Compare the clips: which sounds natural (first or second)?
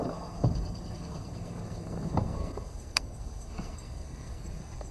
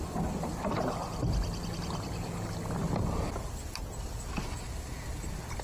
second